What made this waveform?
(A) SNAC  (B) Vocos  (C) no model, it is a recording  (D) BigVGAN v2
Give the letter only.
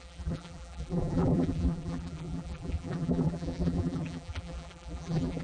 D